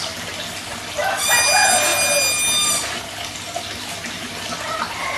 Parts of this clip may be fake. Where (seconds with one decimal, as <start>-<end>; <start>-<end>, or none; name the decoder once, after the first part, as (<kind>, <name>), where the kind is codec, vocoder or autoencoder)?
none